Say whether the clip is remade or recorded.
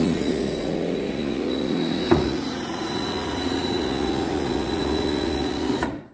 remade